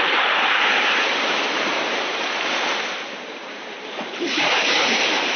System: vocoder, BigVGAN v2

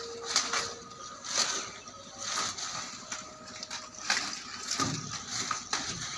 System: none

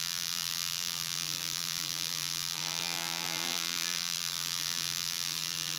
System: vocoder, BigVGAN v2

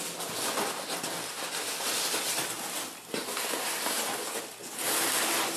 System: none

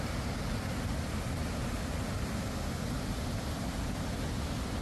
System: none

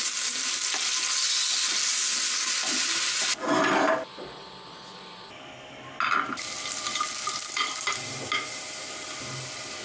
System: none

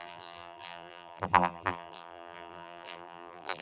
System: vocoder, BigVGAN v2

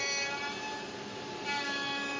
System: vocoder, BigVGAN v2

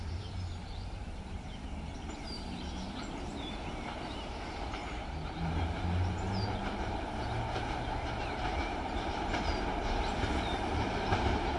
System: vocoder, BigVGAN v2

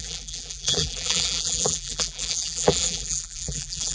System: vocoder, BigVGAN v2